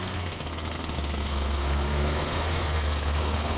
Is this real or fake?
fake